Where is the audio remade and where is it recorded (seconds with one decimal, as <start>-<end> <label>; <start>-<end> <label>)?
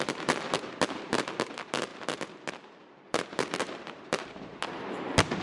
0.0-1.9 remade; 1.9-2.5 recorded; 2.5-5.4 remade